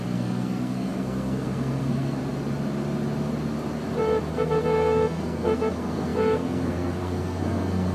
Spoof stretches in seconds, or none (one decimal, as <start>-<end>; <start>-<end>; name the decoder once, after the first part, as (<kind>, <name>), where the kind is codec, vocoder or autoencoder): 0.0-2.2 (codec, SNAC); 4.3-7.9